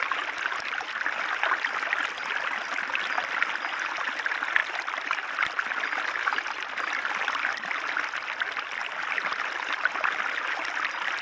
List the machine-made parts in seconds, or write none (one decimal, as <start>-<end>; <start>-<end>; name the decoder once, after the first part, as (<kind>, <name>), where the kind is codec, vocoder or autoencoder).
4.6-5.5 (vocoder, BigVGAN v2); 8.8-9.4